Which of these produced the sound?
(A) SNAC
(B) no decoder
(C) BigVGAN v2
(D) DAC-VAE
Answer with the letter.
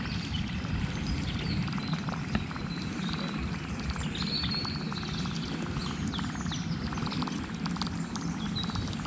B